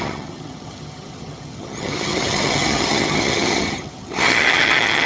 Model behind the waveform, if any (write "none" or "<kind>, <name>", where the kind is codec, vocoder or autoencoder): vocoder, HiFi-GAN